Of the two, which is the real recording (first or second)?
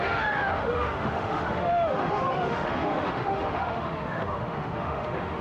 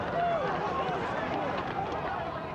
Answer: second